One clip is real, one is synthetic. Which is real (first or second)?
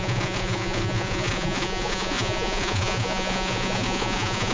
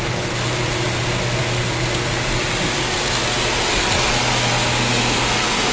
second